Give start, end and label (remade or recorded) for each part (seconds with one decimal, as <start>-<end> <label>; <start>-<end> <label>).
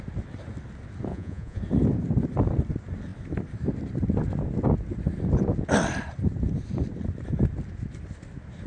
0.0-1.1 recorded; 1.1-1.6 remade; 1.6-8.7 recorded